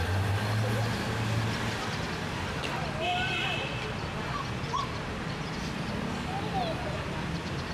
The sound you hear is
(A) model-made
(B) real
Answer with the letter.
B